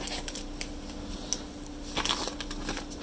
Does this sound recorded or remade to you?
recorded